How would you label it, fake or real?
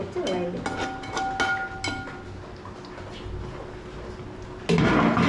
real